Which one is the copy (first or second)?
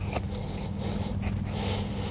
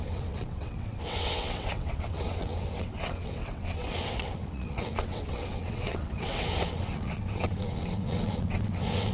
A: second